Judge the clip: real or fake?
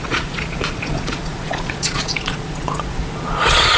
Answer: fake